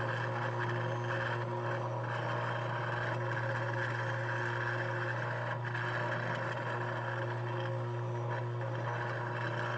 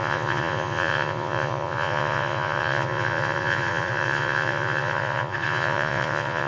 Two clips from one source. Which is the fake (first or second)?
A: second